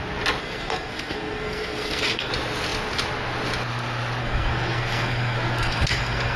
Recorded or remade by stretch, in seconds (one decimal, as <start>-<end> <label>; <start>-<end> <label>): 0.0-0.4 recorded; 0.4-2.3 remade; 2.3-4.2 recorded; 4.2-6.4 remade